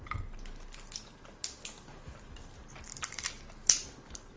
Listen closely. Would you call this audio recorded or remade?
recorded